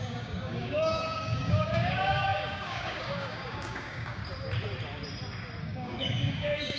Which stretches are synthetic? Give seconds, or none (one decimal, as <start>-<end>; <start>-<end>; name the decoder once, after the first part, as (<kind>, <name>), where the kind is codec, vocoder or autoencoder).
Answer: 0.0-4.2 (codec, DAC); 5.6-6.8